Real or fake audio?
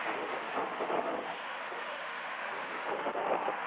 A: fake